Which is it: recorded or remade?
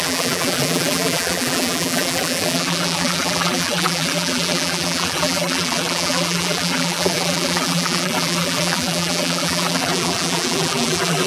remade